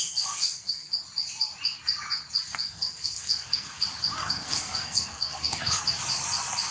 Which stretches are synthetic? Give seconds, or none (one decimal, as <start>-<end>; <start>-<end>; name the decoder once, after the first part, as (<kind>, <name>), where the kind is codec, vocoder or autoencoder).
0.0-0.9 (codec, SNAC); 2.5-3.8; 4.2-5.8